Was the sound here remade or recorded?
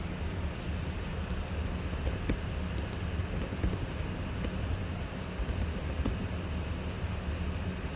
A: recorded